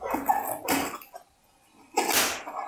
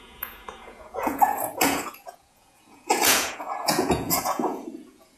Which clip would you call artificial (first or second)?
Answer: second